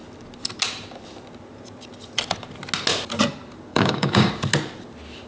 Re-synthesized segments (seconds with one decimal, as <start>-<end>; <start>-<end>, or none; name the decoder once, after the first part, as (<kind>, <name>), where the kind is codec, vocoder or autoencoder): 3.7-4.3 (codec, DAC)